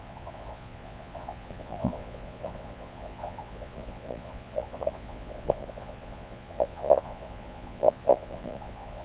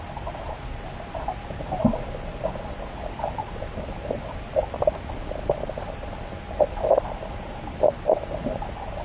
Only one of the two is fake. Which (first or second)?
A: first